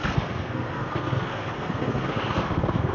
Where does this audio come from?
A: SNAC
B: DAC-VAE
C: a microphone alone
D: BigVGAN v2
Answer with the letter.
A